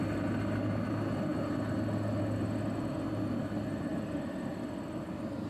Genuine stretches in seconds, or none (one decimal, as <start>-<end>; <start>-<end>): 0.0-3.9; 4.5-5.5